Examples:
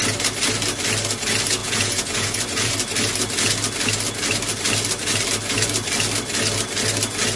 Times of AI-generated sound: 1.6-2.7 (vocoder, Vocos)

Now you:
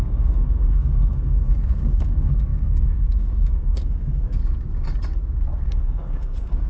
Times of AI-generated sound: 0.0-4.4 (codec, SNAC); 5.6-6.7

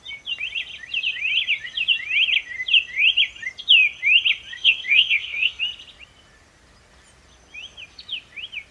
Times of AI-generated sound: 4.5-5.6 (codec, SNAC)

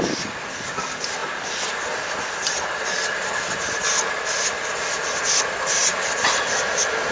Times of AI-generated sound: none

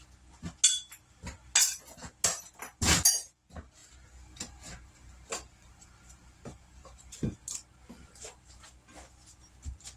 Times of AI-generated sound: 3.8-7.4 (vocoder, BigVGAN v2)

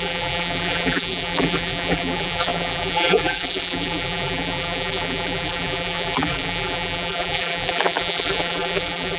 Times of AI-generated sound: 0.0-9.2 (vocoder, BigVGAN v2)

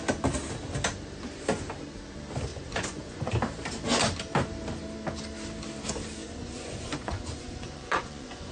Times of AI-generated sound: 2.5-3.3 (vocoder, Vocos); 6.2-8.5

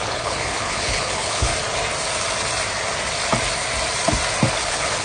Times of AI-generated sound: 0.0-1.5 (codec, HILCodec); 4.5-5.0